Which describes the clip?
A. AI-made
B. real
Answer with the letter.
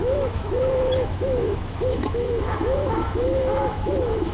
A